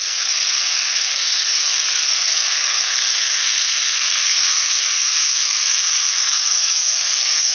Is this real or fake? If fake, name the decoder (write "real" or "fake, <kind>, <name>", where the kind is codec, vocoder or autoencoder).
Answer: fake, codec, SNAC